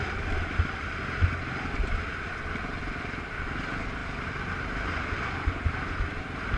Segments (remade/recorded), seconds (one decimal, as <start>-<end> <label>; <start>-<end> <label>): 0.0-6.6 recorded